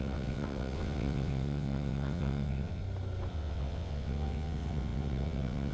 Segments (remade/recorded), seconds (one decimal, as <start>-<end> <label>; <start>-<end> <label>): 0.0-2.8 remade; 2.8-3.3 recorded; 3.3-5.7 remade